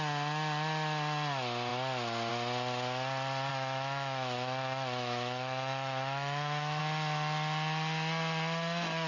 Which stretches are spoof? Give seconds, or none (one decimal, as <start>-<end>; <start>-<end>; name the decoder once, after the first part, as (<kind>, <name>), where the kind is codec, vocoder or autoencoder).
3.5-6.8 (autoencoder, DAC-VAE)